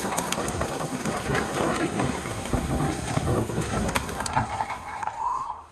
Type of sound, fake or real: fake